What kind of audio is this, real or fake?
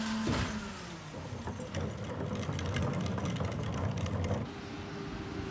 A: real